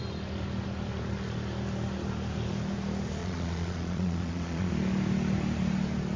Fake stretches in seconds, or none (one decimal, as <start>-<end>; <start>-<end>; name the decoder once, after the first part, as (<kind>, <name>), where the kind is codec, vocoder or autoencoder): 3.2-4.7 (vocoder, Vocos)

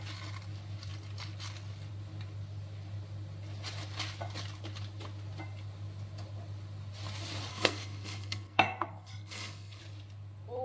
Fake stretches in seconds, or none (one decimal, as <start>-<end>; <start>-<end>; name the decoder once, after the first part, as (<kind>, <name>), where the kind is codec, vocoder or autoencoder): 7.5-9.8 (codec, SNAC)

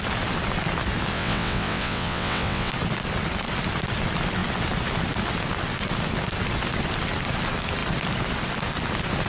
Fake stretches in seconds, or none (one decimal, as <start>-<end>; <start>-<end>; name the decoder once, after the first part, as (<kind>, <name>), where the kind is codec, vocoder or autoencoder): 1.1-2.7 (vocoder, WaveNeXt)

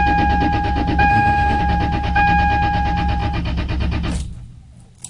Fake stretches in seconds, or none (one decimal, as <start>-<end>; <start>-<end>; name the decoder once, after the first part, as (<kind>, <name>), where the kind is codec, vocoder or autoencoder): 1.1-1.6 (autoencoder, DAC-VAE)

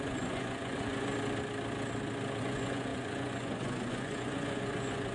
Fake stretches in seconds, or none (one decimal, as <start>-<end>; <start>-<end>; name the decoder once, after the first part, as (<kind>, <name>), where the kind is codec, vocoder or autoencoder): 0.0-1.1 (vocoder, Vocos); 2.4-5.1

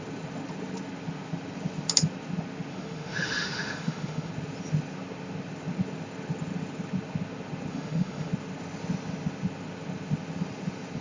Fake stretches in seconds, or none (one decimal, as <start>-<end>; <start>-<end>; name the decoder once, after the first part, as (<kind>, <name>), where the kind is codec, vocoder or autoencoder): 2.7-4.3 (autoencoder, DAC-VAE); 7.7-8.3

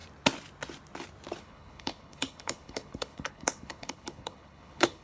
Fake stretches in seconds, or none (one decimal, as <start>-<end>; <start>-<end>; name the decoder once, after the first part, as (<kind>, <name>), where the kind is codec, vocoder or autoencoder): 1.4-5.0 (codec, HILCodec)

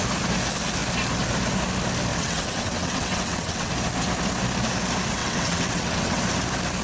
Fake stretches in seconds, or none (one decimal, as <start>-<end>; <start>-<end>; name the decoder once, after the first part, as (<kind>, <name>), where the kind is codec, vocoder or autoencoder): 2.1-3.7 (vocoder, WaveNeXt); 5.2-6.2